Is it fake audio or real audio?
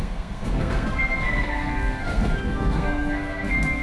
fake